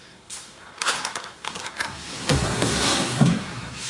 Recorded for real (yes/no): no